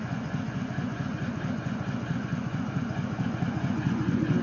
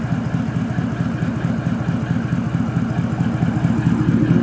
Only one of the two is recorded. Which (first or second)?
second